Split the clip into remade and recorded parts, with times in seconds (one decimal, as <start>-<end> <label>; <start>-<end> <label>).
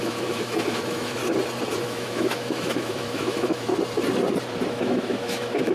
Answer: 0.0-1.2 remade; 1.2-1.8 recorded; 1.8-3.7 remade; 3.7-4.7 recorded; 4.7-5.7 remade